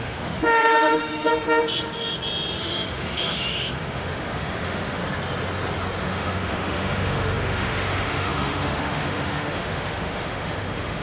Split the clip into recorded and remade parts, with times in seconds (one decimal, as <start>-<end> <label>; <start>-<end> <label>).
0.0-1.3 remade; 1.3-2.6 recorded; 2.6-5.0 remade; 5.0-6.0 recorded; 6.0-11.0 remade